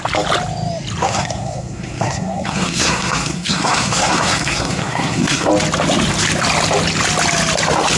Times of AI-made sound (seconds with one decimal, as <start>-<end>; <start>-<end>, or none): 1.0-5.5